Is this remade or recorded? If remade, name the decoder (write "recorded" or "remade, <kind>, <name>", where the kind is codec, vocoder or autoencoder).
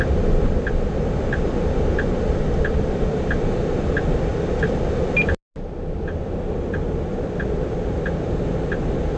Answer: recorded